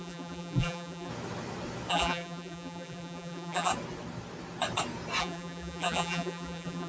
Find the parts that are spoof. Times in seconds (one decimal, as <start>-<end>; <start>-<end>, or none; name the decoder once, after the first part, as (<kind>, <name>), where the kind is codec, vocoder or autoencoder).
0.0-1.1 (vocoder, BigVGAN v2); 1.9-3.7; 5.2-6.9